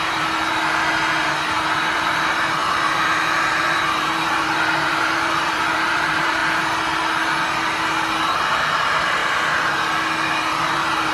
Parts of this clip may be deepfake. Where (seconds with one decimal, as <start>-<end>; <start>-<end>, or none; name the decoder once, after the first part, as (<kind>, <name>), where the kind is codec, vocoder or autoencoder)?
0.0-0.6 (vocoder, BigVGAN v2); 1.2-6.4; 8.2-9.2; 10.3-11.1